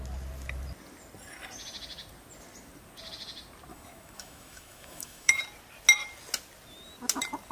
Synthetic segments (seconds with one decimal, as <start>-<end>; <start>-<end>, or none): 3.7-5.4